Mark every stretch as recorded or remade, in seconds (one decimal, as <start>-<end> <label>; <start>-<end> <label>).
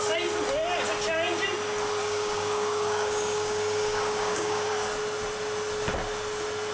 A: 0.0-2.0 recorded; 2.0-4.7 remade; 4.7-6.7 recorded